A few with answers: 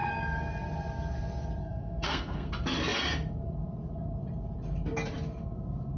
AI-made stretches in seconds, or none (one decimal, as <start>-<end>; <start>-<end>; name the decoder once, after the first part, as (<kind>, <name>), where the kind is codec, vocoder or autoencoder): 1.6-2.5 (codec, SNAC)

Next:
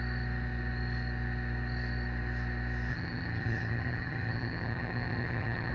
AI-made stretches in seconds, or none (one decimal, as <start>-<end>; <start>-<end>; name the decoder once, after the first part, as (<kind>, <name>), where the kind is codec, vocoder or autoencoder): 2.9-5.7 (vocoder, HiFi-GAN)

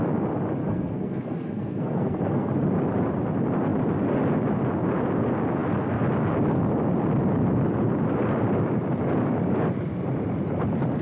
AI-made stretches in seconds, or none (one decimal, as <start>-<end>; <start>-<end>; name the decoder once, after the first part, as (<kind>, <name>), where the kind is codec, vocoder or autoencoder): 0.6-2.5 (codec, SNAC)

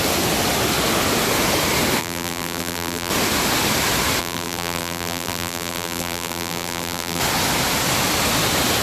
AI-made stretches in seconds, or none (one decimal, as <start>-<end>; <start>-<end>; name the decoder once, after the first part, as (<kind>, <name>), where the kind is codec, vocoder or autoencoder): 2.0-3.1 (vocoder, BigVGAN v2); 4.2-7.2

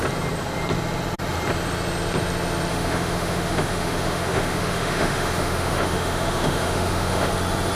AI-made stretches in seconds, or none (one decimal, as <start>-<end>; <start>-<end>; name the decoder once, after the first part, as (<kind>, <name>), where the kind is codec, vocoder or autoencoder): 2.7-7.3 (autoencoder, DAC-VAE)

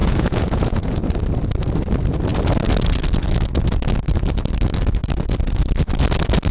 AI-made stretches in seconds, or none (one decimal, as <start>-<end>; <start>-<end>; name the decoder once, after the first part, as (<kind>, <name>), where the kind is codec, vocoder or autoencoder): 0.0-1.0 (vocoder, Vocos)

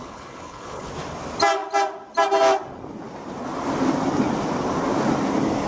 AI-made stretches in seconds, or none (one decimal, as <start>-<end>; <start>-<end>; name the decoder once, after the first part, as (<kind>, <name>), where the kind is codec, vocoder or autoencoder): 0.0-0.9 (codec, HILCodec)

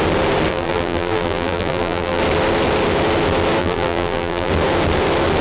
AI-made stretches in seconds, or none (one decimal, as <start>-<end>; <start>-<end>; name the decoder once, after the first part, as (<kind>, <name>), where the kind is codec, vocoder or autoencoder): 0.5-2.2 (vocoder, BigVGAN v2); 3.6-4.5